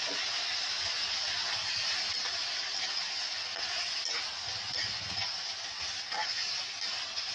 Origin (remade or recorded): recorded